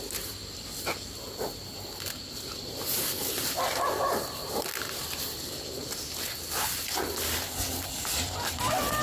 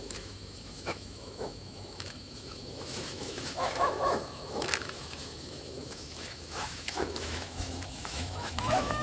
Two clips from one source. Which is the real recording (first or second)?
first